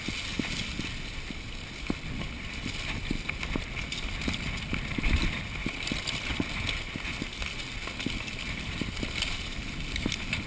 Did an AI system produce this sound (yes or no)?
no